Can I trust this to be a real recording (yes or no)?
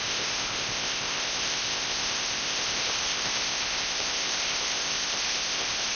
no